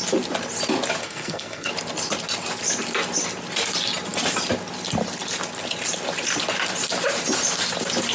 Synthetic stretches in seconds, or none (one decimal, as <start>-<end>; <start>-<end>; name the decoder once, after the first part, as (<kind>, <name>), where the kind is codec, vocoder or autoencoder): 1.0-1.7 (codec, SNAC)